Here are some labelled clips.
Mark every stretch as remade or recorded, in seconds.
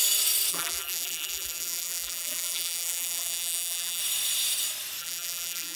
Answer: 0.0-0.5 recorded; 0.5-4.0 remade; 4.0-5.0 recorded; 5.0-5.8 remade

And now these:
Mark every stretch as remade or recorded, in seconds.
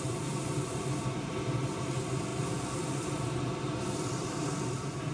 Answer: 0.0-5.1 remade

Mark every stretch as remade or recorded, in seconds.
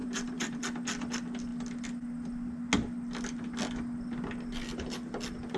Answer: 0.0-0.6 remade; 0.6-5.6 recorded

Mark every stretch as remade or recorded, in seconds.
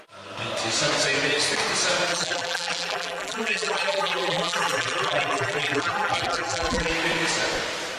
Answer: 0.0-2.1 recorded; 2.1-6.9 remade; 6.9-8.0 recorded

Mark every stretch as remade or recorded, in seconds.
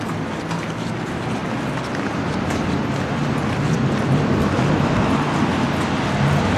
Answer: 0.0-6.6 recorded